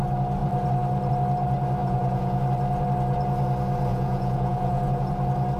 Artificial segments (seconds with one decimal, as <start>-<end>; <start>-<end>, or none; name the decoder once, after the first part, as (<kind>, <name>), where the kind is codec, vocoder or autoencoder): 1.8-2.4 (vocoder, Vocos); 3.9-5.1